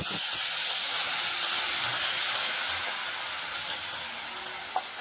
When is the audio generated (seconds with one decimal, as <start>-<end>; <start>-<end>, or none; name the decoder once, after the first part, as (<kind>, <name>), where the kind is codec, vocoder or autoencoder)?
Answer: none

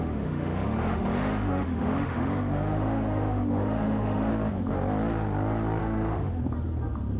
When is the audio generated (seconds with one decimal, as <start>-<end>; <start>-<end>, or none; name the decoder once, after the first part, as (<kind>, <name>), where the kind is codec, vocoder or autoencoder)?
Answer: 0.0-4.3 (autoencoder, DAC-VAE); 5.8-6.4

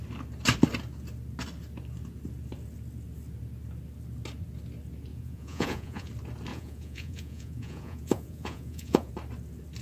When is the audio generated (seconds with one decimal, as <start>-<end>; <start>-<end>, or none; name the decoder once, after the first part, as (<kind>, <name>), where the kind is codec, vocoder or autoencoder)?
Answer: 5.1-6.1 (vocoder, Vocos); 6.5-9.1

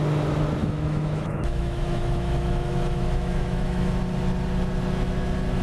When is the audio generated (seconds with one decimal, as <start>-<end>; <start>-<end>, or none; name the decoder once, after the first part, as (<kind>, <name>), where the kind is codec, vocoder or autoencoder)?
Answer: 0.6-4.0 (autoencoder, DAC-VAE)